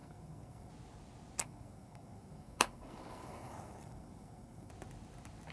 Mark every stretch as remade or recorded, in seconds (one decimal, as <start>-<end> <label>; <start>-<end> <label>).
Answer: 0.0-0.7 remade; 0.7-1.4 recorded; 1.4-4.7 remade; 4.7-5.5 recorded